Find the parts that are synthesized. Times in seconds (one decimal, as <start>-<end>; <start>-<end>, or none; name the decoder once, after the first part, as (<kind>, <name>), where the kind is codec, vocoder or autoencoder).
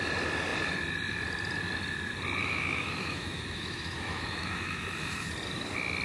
2.4-5.3 (autoencoder, DAC-VAE)